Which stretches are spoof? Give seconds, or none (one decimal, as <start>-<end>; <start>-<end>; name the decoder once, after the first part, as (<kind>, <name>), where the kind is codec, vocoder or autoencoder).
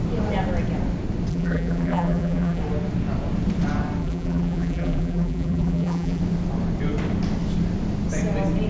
1.3-2.6 (vocoder, BigVGAN v2); 4.0-6.2